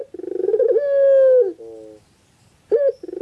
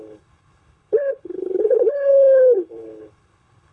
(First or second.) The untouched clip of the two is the first